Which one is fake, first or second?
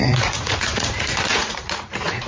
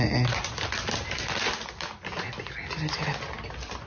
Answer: first